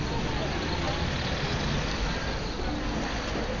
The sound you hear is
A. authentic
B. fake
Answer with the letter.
A